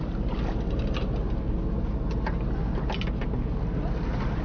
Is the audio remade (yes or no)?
no